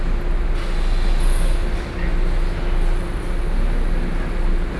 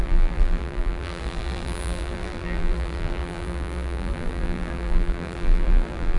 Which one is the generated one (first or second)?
second